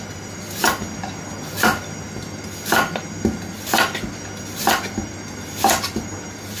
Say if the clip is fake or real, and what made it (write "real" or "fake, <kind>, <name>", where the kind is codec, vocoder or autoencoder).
real